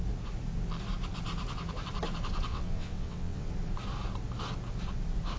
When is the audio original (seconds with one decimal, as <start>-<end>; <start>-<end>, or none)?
0.0-2.5; 3.5-5.4